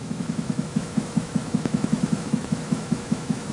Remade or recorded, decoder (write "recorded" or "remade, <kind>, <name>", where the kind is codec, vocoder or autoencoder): remade, autoencoder, DAC-VAE